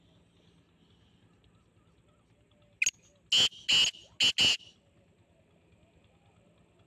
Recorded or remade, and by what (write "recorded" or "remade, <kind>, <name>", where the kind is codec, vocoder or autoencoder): recorded